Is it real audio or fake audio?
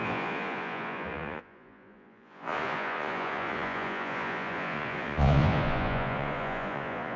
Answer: fake